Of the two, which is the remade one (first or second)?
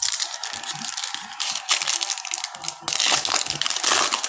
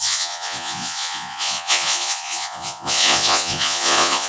second